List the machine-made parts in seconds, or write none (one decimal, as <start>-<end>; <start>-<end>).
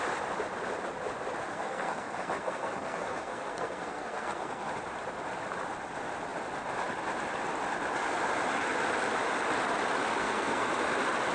1.5-4.7; 10.2-10.7